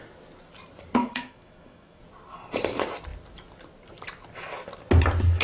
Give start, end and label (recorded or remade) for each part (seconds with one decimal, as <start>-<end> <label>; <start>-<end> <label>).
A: 0.0-1.0 recorded; 1.0-2.0 remade; 2.0-5.4 recorded